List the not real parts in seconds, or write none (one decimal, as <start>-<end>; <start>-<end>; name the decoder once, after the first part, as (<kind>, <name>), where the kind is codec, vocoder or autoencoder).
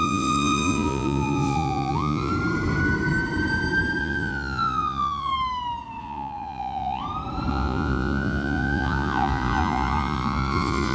0.0-2.3 (vocoder, Vocos); 4.0-5.3; 6.0-7.0; 7.5-10.9